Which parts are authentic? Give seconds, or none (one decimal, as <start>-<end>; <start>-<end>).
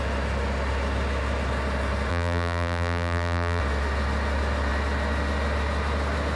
0.0-2.1; 3.6-6.4